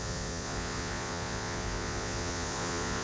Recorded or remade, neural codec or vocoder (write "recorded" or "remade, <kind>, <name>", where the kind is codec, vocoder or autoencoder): remade, vocoder, Vocos